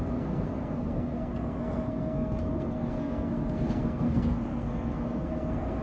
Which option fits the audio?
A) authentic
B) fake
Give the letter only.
B